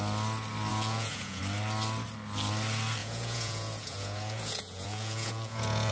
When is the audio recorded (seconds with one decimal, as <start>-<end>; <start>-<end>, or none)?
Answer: 0.0-0.7; 1.4-3.0